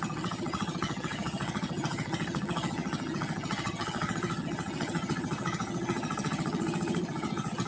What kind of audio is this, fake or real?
fake